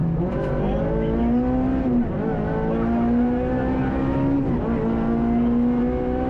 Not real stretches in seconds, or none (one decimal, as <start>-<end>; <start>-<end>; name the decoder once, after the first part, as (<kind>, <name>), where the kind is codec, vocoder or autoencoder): none